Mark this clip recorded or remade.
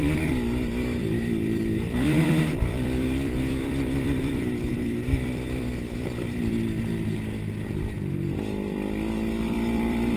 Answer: remade